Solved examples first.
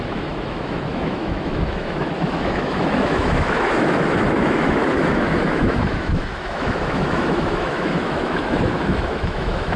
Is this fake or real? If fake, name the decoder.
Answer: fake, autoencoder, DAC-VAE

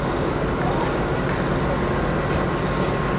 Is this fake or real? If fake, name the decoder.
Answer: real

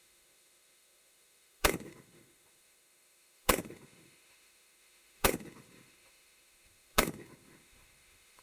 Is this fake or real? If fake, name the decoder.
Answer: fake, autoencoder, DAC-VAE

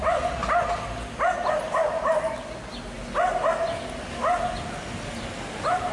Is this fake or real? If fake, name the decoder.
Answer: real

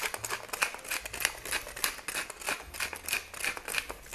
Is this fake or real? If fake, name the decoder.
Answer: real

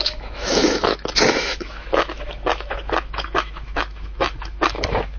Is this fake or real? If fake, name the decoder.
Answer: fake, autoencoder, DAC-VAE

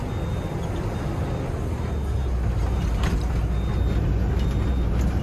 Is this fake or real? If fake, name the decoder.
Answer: real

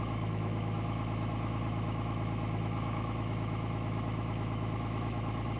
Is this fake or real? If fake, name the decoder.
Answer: fake, autoencoder, DAC-VAE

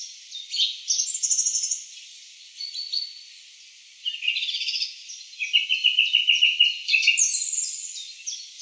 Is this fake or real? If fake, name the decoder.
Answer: real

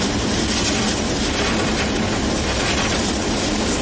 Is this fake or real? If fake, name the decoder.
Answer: real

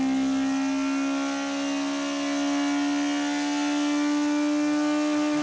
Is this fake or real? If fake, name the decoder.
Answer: real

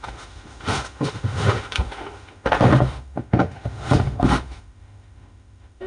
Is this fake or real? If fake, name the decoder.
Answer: fake, autoencoder, DAC-VAE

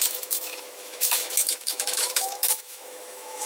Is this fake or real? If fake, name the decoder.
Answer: fake, autoencoder, DAC-VAE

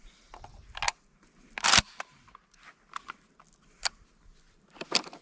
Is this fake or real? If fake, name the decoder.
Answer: real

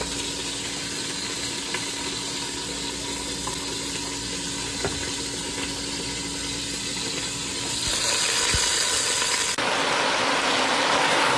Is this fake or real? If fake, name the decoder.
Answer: real